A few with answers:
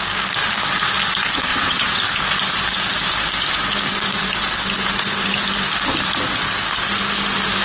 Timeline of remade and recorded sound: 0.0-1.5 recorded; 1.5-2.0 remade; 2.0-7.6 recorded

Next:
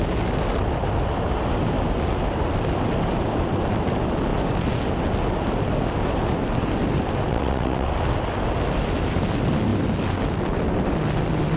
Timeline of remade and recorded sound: 0.0-7.3 recorded; 7.3-7.9 remade; 7.9-11.6 recorded

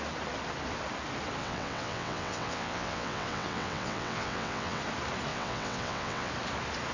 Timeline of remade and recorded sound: 0.0-1.4 recorded; 1.4-4.8 remade; 4.8-5.3 recorded; 5.3-6.3 remade; 6.3-6.9 recorded

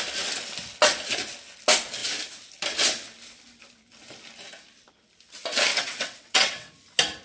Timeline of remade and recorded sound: 0.0-5.7 recorded; 5.7-6.7 remade; 6.7-7.2 recorded

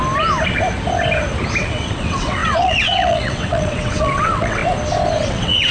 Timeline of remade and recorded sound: 0.0-1.6 recorded; 1.6-4.6 remade; 4.6-5.2 recorded; 5.2-5.7 remade

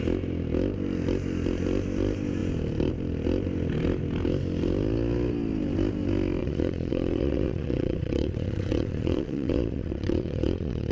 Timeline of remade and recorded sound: 0.0-6.4 recorded; 6.4-10.9 remade

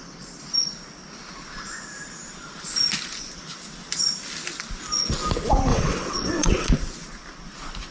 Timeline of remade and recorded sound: 0.0-5.7 recorded; 5.7-6.7 remade; 6.7-7.9 recorded

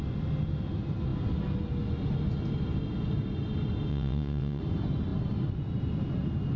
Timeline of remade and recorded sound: 0.0-3.9 recorded; 3.9-4.6 remade; 4.6-6.6 recorded